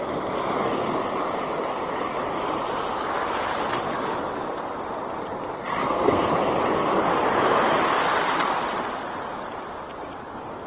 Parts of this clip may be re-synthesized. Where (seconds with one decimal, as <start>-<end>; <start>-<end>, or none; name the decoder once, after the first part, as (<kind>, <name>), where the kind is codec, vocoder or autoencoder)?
5.8-6.3 (codec, SNAC)

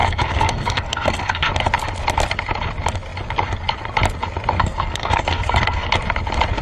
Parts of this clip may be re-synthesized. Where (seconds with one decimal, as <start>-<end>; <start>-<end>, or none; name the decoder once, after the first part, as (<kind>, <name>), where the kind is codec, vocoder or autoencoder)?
0.0-1.5 (codec, SNAC); 4.6-5.9

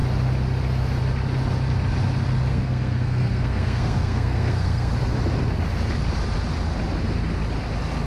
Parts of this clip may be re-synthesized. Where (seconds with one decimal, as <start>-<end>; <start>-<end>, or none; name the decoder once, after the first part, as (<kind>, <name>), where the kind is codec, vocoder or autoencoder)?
2.5-4.9 (codec, SNAC)

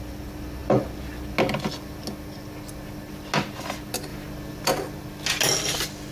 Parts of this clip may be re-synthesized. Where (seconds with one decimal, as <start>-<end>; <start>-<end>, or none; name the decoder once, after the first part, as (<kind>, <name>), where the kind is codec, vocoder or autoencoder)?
none

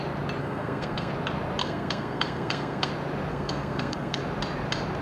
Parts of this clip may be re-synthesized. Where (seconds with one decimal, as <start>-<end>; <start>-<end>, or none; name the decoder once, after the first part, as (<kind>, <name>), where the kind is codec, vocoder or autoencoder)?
0.4-1.1 (codec, SNAC); 1.6-2.9; 3.3-4.2